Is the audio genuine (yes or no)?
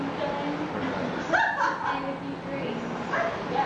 yes